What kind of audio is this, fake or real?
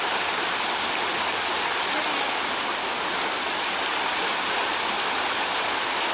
real